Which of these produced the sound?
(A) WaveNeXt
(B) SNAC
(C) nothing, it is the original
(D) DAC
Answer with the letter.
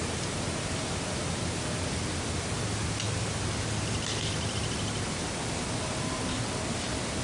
C